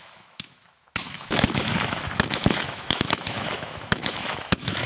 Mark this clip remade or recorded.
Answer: remade